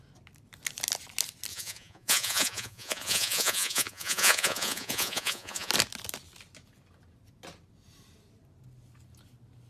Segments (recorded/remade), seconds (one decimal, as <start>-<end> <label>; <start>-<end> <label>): 0.0-1.5 recorded; 1.5-5.7 remade; 5.7-9.7 recorded